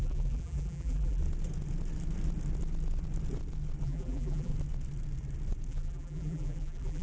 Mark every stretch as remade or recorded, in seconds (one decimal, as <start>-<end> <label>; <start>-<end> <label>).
0.0-1.2 remade; 1.2-3.8 recorded; 3.8-4.5 remade; 4.5-5.7 recorded; 5.7-7.0 remade